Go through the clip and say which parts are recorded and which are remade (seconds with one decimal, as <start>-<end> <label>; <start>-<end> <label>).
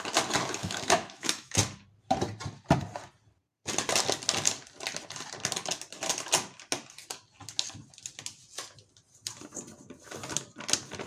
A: 0.0-0.6 recorded; 0.6-1.6 remade; 1.6-11.1 recorded